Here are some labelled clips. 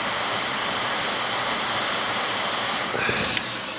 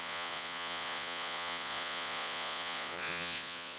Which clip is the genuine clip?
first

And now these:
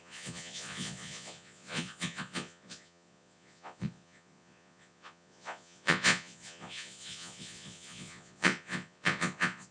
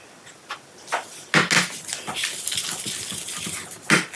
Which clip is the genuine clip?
second